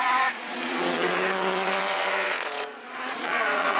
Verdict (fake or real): fake